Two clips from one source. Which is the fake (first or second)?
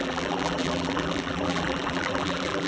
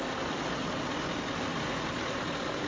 first